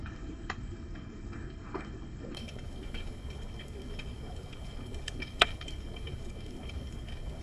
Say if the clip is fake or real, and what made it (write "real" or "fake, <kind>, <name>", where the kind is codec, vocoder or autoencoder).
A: fake, codec, DAC